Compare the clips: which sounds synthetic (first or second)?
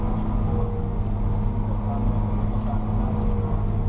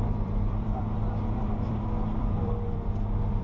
second